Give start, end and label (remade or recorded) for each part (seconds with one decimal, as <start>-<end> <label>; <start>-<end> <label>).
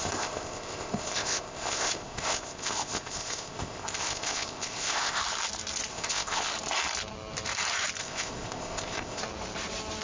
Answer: 0.0-5.2 remade; 5.2-5.9 recorded; 5.9-6.5 remade; 6.5-8.0 recorded; 8.0-9.2 remade; 9.2-10.0 recorded